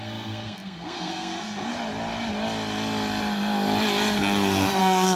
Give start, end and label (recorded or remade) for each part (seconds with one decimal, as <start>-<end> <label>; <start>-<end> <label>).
0.0-1.7 remade; 1.7-4.8 recorded; 4.8-5.2 remade